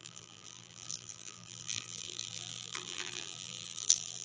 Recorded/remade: remade